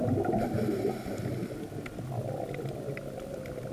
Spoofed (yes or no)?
no